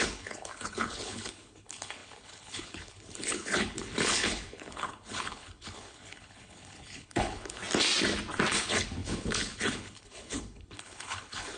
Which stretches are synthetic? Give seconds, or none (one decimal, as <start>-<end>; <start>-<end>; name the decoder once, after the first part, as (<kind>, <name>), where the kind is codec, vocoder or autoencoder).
0.0-7.6 (codec, HILCodec); 8.5-11.6